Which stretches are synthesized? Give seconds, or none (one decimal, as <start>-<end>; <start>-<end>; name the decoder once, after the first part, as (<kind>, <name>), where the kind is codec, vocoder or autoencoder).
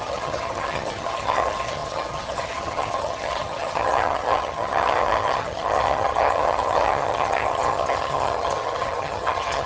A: 0.0-9.7 (vocoder, HiFi-GAN)